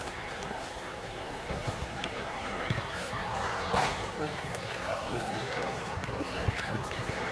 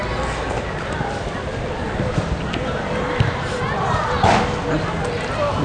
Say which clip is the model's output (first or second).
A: first